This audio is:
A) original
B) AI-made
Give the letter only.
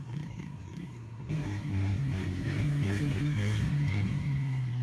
B